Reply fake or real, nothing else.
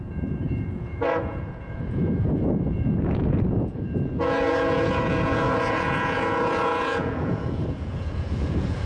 fake